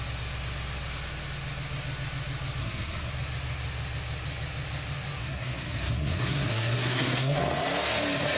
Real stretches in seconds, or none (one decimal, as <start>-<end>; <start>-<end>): 0.0-2.6; 3.1-5.2; 7.4-8.4